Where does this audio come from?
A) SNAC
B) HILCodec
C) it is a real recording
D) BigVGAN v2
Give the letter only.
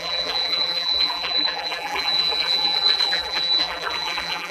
D